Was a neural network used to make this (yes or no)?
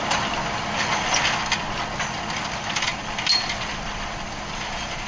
no